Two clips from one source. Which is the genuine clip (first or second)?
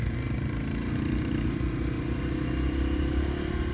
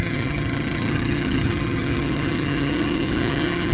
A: first